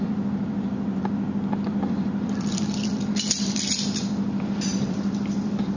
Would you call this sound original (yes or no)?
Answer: no